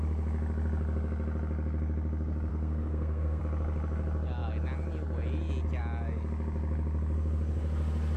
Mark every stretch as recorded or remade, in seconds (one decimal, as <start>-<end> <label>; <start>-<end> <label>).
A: 0.0-2.5 recorded; 2.5-3.4 remade; 3.4-8.2 recorded